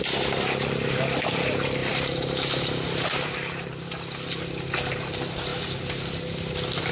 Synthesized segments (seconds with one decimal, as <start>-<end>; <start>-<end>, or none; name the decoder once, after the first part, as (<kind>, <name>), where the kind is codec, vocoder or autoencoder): 1.8-3.7 (vocoder, BigVGAN v2)